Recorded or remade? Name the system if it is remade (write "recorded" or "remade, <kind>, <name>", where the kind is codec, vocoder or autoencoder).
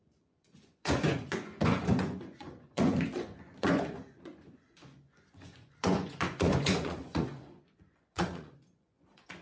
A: remade, vocoder, Vocos